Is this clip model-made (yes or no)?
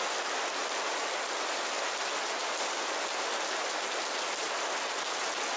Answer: no